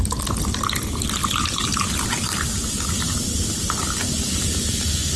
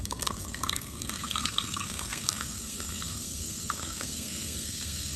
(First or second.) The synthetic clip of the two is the second